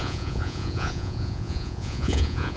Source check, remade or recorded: remade